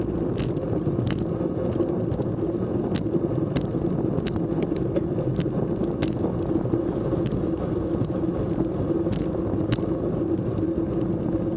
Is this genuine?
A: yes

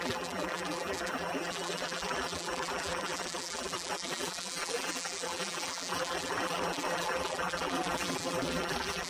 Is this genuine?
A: no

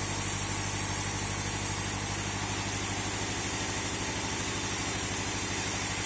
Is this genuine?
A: yes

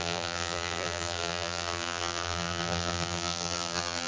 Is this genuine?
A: no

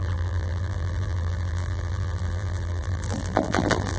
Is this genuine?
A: no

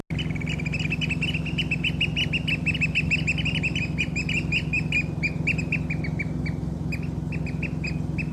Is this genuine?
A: yes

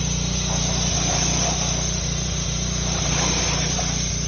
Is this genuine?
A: yes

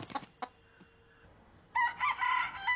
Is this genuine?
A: yes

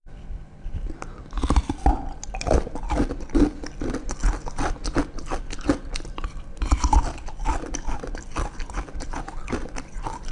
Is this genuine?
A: no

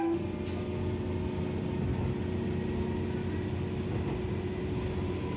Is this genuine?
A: yes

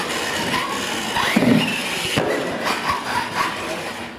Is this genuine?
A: yes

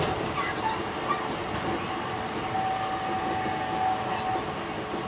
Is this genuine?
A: yes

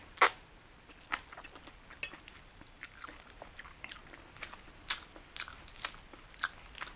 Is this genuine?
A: yes